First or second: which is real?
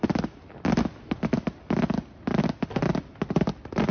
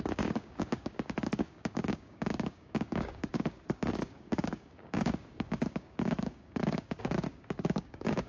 first